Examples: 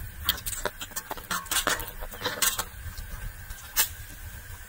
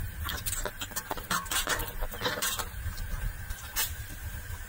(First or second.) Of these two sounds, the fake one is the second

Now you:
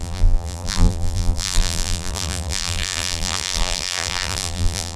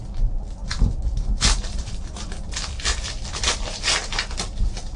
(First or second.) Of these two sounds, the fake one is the first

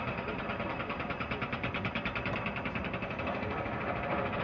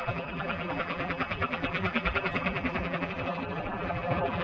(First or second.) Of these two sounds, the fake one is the second